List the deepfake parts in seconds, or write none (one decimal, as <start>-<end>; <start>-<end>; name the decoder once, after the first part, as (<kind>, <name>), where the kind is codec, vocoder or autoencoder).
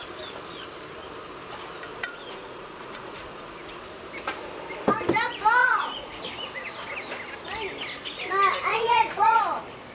1.9-3.6 (vocoder, Vocos); 5.6-6.2; 8.7-9.4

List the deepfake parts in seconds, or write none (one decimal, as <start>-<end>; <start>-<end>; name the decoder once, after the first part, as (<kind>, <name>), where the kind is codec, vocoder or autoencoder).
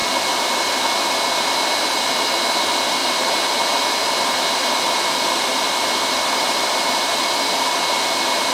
3.0-7.7 (vocoder, BigVGAN v2)